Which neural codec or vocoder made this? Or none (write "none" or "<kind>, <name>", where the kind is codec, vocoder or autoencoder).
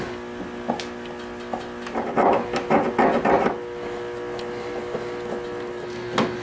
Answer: none